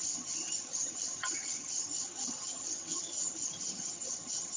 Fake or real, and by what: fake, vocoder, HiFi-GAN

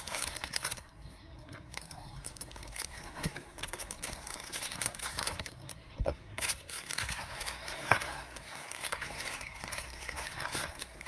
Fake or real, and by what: fake, codec, SNAC